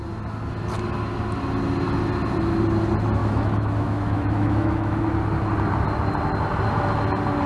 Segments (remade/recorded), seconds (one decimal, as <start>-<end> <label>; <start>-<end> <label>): 0.0-3.2 recorded; 3.2-5.0 remade; 5.0-7.5 recorded